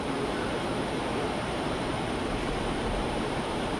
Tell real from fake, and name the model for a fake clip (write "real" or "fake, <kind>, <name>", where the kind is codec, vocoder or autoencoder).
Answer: fake, vocoder, BigVGAN v2